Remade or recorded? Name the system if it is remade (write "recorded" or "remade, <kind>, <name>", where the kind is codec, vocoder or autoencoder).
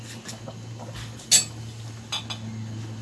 recorded